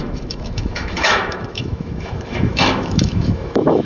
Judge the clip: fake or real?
fake